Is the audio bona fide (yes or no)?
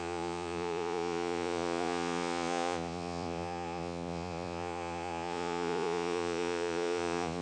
no